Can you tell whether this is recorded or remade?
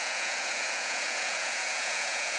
remade